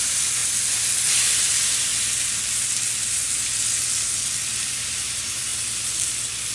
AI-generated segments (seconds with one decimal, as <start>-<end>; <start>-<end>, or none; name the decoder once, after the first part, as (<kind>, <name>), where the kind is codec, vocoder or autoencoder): 0.0-0.4 (vocoder, BigVGAN v2); 1.4-1.9; 4.7-5.5